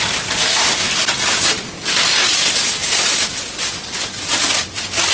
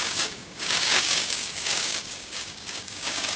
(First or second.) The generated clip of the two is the second